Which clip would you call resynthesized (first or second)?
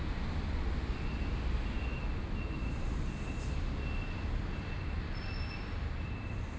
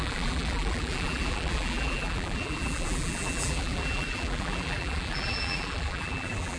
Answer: second